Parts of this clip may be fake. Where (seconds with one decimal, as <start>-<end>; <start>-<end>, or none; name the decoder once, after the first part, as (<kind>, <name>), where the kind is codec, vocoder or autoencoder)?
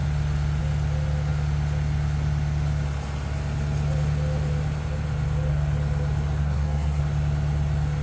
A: 6.4-7.0 (codec, SNAC)